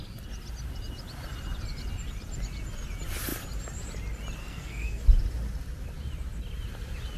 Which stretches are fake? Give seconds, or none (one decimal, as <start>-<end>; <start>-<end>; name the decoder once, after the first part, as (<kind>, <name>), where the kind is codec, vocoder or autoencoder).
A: 4.4-5.0 (codec, SNAC)